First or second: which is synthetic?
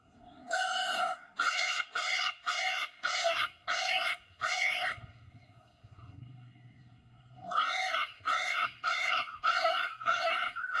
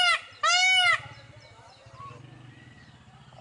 first